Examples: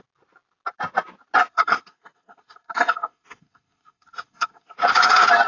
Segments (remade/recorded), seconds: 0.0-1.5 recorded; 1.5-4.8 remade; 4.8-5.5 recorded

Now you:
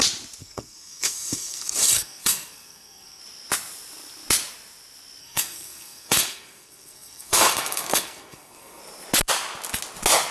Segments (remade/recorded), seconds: 0.0-0.4 recorded; 0.4-3.2 remade; 3.2-5.2 recorded; 5.2-8.8 remade; 8.8-10.3 recorded

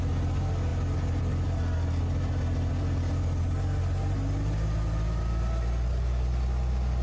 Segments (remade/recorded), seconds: 0.0-7.0 recorded